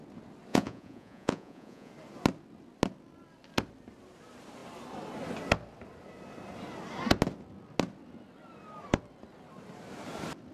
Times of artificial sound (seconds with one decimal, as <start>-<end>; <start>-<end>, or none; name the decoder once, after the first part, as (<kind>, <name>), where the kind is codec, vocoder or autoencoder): 0.5-1.9 (vocoder, Vocos)